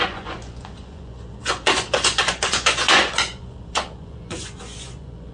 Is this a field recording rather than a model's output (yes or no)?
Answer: no